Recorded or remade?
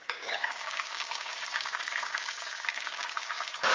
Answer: remade